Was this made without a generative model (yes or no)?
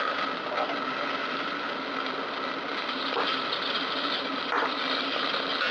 yes